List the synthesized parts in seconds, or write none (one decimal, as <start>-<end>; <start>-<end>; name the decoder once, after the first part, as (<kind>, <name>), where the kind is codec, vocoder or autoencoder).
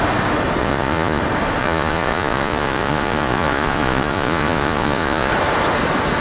0.6-1.2 (vocoder, Vocos); 1.6-5.3